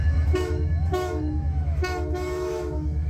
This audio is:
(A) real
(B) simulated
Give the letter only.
B